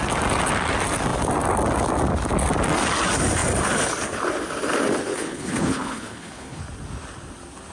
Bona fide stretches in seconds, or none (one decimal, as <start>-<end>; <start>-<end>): 0.0-5.1; 6.6-7.7